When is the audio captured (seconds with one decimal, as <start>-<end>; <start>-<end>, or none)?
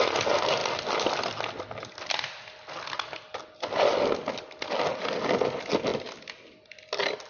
0.0-7.3